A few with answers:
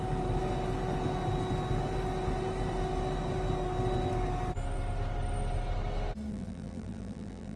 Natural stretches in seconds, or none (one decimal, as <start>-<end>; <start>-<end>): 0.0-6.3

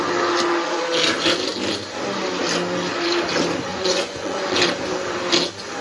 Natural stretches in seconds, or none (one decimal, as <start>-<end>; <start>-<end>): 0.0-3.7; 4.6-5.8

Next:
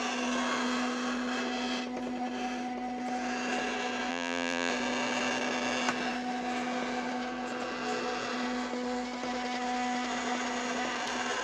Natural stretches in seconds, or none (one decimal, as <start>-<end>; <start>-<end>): 0.0-4.1; 4.7-11.4

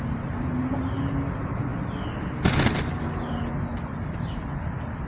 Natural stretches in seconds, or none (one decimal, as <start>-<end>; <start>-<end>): 0.0-5.1

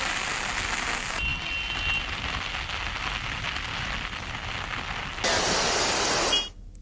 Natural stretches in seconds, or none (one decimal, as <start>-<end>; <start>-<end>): 0.0-6.8

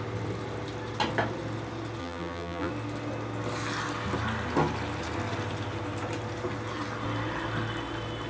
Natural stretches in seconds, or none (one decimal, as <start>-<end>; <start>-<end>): 0.0-2.0; 2.7-8.3